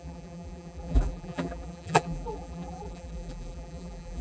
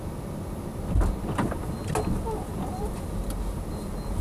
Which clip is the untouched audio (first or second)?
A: second